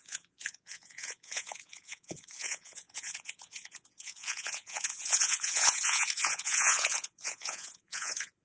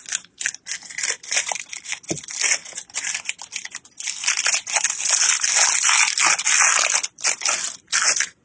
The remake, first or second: first